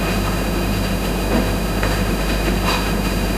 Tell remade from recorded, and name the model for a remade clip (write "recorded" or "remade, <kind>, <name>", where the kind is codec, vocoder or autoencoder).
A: remade, autoencoder, DAC-VAE